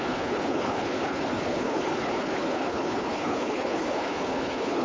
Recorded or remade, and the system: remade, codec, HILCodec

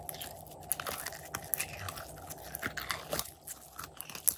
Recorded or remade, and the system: recorded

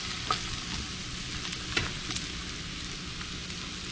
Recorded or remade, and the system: recorded